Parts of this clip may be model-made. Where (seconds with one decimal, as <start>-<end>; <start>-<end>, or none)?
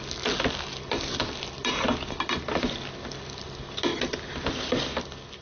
none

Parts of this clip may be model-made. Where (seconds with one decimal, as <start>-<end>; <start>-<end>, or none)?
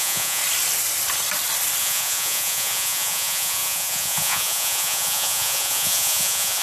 0.0-0.4; 1.8-6.6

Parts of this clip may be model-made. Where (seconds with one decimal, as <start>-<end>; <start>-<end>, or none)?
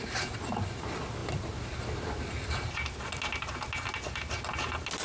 none